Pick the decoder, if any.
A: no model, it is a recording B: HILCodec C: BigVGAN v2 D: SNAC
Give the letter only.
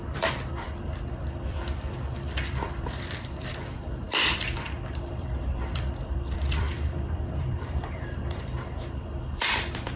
C